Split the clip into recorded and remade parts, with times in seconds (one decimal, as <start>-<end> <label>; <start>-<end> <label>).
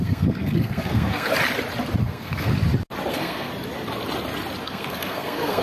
0.0-1.3 remade; 1.3-2.0 recorded; 2.0-2.5 remade; 2.5-3.1 recorded; 3.1-3.5 remade; 3.5-4.6 recorded; 4.6-5.6 remade